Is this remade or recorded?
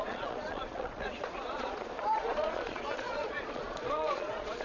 remade